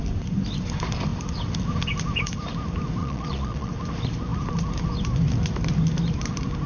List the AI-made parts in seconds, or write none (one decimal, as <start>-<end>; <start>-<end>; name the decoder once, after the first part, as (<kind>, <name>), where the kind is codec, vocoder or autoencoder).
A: 3.0-3.7 (vocoder, Vocos)